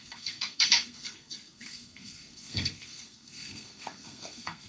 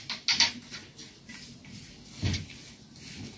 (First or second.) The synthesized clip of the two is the first